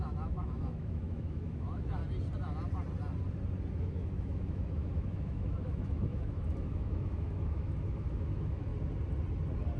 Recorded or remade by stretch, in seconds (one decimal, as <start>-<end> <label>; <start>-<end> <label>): 0.0-2.0 remade; 2.0-3.7 recorded; 3.7-8.7 remade; 8.7-9.8 recorded